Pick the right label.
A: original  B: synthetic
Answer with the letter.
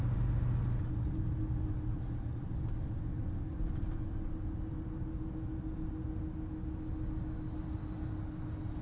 A